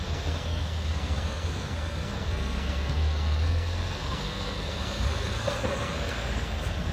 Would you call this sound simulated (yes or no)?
yes